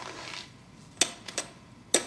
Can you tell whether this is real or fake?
real